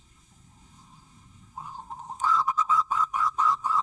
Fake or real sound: fake